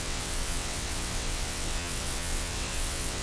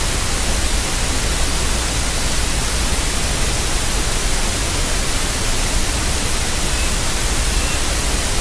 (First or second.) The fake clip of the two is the first